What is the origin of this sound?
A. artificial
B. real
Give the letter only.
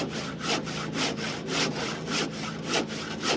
B